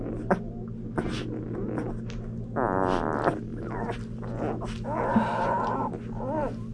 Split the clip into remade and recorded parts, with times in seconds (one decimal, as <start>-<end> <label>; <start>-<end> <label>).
0.0-6.7 recorded